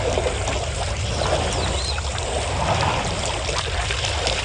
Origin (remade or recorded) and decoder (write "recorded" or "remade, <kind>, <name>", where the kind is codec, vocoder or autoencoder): recorded